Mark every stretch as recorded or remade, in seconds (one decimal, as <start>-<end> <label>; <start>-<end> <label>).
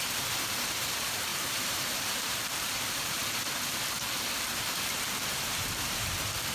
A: 0.0-3.2 remade; 3.2-4.9 recorded; 4.9-6.5 remade